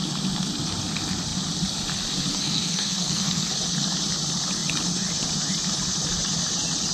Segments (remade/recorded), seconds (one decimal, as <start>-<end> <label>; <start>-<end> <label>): 0.0-2.3 recorded; 2.3-3.5 remade; 3.5-6.9 recorded